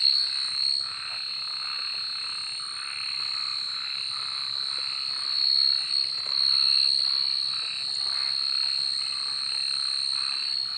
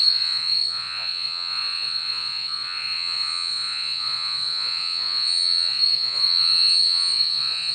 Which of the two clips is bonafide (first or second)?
first